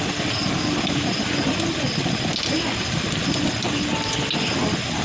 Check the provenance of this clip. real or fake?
real